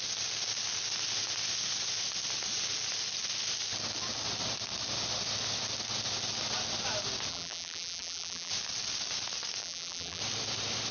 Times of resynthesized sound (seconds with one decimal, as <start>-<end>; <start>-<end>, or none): 7.3-8.5; 9.6-10.2

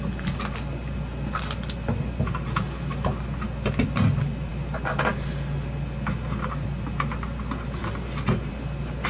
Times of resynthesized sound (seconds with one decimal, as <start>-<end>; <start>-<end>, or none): none

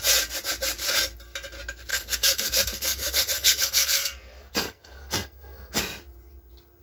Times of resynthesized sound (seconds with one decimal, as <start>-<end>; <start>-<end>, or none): 1.9-5.8

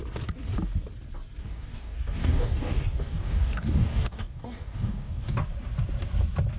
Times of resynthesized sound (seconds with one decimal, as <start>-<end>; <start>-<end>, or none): 1.4-5.4

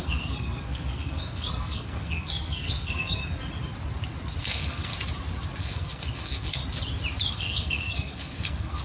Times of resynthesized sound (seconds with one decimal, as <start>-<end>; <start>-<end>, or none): 0.0-3.2; 4.4-4.9; 5.6-6.6; 7.3-8.8

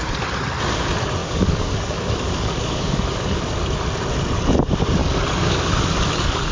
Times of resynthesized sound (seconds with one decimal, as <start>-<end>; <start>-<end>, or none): 1.2-3.5; 5.0-6.5

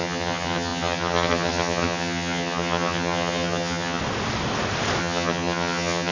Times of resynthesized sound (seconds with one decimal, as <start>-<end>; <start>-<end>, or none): 0.0-4.0; 5.0-6.1

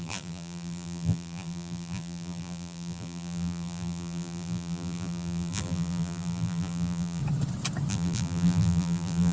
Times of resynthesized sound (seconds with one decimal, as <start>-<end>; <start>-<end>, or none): 0.0-7.2; 7.9-9.3